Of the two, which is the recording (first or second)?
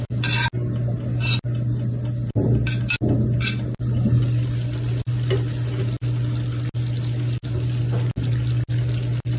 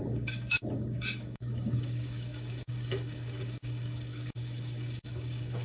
first